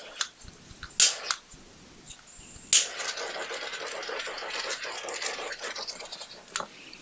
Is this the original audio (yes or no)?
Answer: yes